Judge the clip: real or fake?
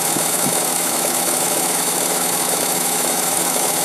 fake